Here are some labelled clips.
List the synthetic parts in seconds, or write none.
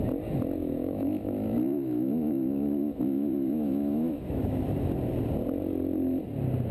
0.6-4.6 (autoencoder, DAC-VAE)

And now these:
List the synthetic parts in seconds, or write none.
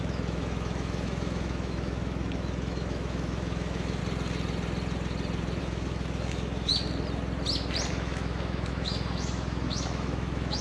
0.0-4.0 (autoencoder, DAC-VAE); 5.6-6.7; 7.9-10.6